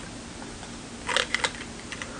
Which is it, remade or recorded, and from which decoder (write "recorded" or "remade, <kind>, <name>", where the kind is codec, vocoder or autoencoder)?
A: recorded